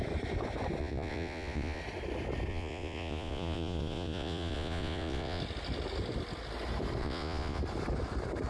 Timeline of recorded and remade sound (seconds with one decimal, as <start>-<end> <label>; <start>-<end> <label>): 0.0-0.8 recorded; 0.8-1.8 remade; 1.8-2.5 recorded; 2.5-5.4 remade; 5.4-7.0 recorded; 7.0-7.6 remade; 7.6-8.5 recorded